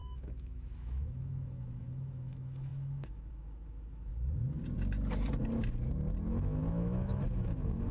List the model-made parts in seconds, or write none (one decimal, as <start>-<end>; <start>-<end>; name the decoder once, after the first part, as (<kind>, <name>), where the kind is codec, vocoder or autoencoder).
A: 0.0-4.1 (autoencoder, DAC-VAE); 6.3-7.9